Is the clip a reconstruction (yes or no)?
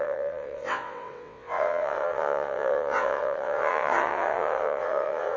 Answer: yes